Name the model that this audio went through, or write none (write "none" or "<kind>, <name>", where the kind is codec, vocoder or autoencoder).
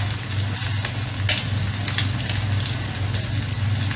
none